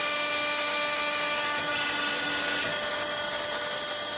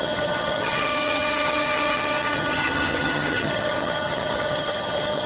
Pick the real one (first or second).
first